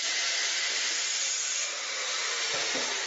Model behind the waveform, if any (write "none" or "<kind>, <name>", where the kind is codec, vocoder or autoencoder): vocoder, BigVGAN v2